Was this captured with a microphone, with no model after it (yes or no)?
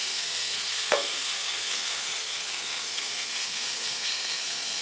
no